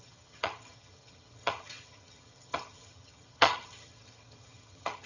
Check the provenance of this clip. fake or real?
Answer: fake